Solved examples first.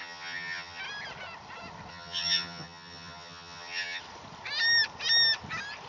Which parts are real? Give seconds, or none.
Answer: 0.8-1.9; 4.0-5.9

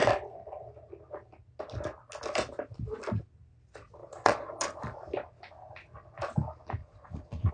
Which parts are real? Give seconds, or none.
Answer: 0.0-4.0; 4.5-6.8